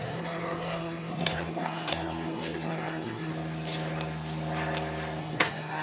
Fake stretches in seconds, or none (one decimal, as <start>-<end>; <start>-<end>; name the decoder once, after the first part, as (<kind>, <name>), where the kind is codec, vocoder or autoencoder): 0.0-3.3 (codec, SNAC); 5.2-5.8